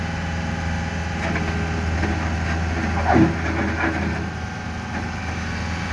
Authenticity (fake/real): real